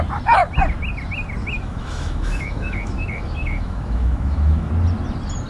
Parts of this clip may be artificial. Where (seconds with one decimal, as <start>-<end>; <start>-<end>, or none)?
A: 1.4-4.7